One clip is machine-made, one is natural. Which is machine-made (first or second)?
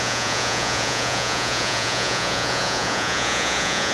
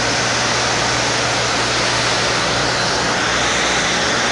first